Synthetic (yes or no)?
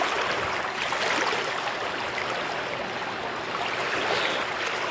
no